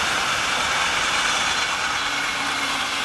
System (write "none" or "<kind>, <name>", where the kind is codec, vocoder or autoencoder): none